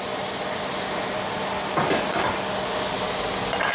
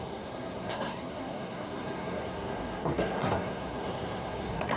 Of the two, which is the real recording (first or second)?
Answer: first